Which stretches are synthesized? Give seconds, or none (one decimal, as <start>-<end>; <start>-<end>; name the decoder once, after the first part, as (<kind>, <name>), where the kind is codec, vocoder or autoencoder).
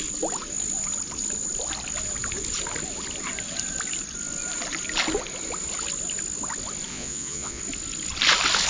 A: 6.9-7.6 (vocoder, Vocos)